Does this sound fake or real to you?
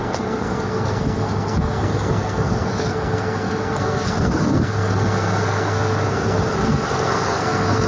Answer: fake